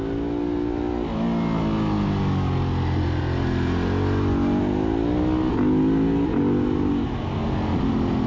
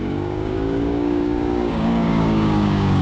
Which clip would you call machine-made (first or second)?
second